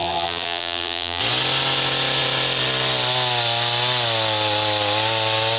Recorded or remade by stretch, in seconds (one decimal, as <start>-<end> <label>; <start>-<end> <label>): 0.0-1.2 remade; 1.2-5.6 recorded